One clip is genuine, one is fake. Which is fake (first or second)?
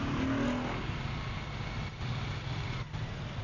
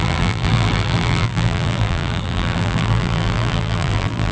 second